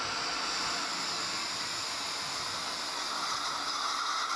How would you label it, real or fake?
real